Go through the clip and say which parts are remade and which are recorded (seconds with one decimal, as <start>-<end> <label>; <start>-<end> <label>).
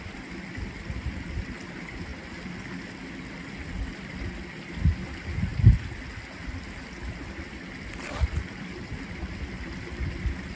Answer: 0.0-10.6 recorded